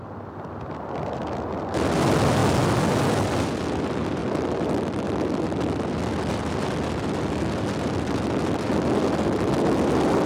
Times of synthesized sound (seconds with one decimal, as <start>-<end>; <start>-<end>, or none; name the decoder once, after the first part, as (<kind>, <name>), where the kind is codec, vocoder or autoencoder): none